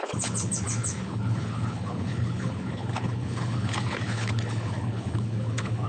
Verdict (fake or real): fake